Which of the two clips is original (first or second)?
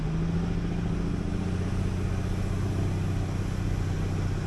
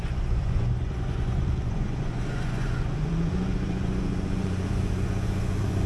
first